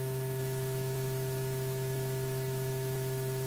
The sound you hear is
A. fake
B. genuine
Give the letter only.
A